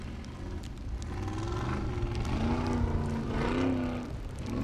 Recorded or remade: recorded